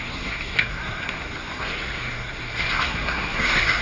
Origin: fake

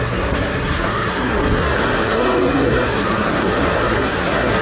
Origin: fake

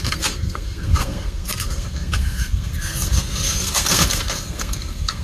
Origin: fake